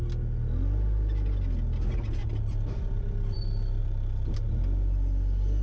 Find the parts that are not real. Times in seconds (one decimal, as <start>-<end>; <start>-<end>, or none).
2.2-3.8